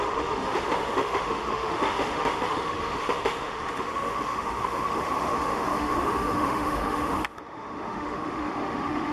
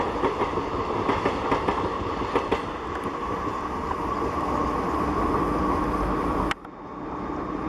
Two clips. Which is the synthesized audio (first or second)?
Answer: first